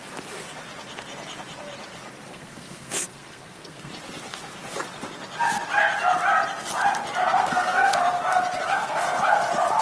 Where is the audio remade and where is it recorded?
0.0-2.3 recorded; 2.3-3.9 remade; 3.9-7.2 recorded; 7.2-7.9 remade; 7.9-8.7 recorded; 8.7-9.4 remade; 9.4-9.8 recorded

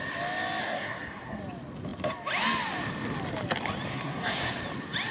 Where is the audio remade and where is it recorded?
0.0-0.6 recorded; 0.6-1.4 remade; 1.4-3.9 recorded; 3.9-4.5 remade; 4.5-5.1 recorded

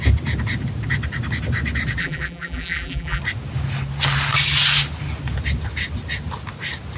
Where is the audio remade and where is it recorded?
0.0-2.0 recorded; 2.0-3.2 remade; 3.2-7.0 recorded

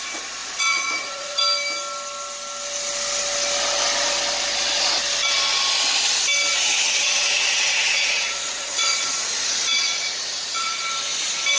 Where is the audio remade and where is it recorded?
0.0-0.4 recorded; 0.4-1.4 remade; 1.4-6.5 recorded; 6.5-10.8 remade; 10.8-11.6 recorded

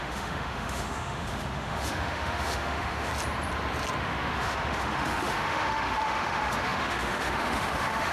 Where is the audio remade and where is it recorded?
0.0-3.1 remade; 3.1-4.0 recorded; 4.0-8.1 remade

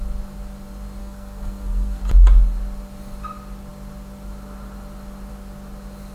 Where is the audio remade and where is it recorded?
0.0-1.0 recorded; 1.0-2.0 remade; 2.0-6.1 recorded

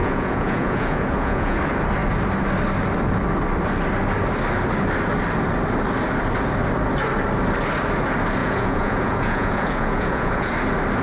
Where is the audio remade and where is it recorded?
0.0-1.6 remade; 1.6-8.4 recorded; 8.4-10.5 remade; 10.5-11.0 recorded